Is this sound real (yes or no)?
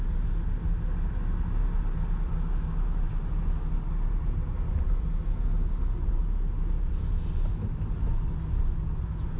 yes